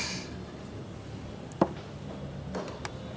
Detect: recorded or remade recorded